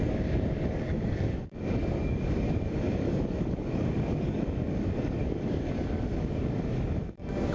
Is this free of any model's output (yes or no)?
no